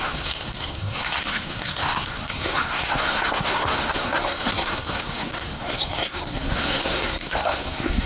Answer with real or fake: fake